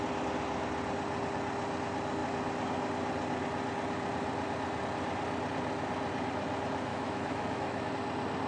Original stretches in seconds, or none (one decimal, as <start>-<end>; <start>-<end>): 0.0-6.9; 7.9-8.5